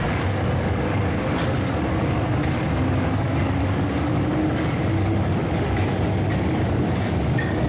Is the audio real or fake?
fake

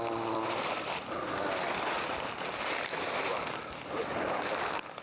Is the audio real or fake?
real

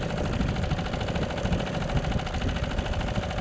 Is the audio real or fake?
real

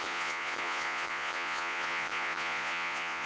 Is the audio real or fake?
fake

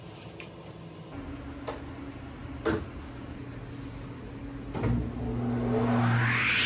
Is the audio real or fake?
real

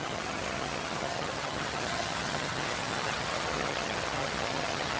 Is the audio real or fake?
fake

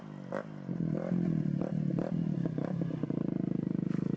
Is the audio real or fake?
fake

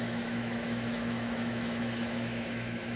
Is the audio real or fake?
fake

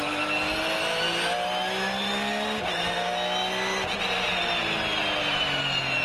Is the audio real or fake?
real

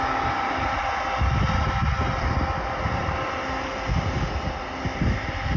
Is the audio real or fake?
real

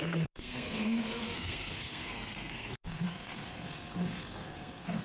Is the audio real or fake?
fake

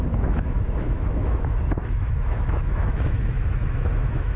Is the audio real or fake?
fake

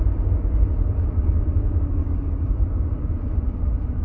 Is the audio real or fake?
real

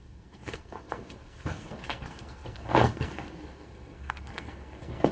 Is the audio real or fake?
fake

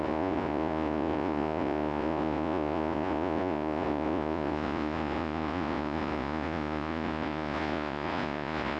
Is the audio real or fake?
fake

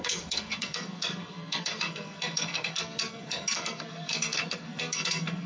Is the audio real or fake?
fake